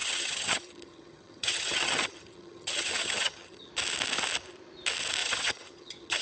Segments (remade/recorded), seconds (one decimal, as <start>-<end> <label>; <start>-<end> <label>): 0.0-3.7 remade; 3.7-5.2 recorded; 5.2-6.2 remade